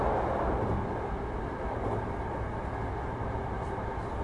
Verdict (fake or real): real